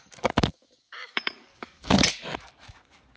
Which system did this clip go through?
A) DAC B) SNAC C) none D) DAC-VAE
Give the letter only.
A